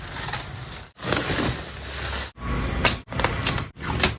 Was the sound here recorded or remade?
recorded